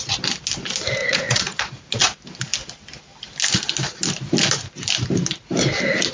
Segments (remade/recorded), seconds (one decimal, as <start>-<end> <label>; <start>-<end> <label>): 0.0-1.0 recorded; 1.0-2.0 remade; 2.0-6.1 recorded